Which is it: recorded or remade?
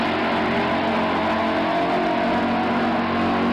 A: recorded